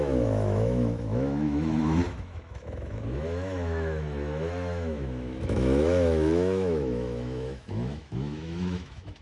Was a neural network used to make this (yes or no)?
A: yes